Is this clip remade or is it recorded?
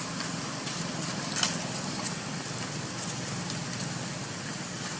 recorded